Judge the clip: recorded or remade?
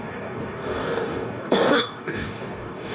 remade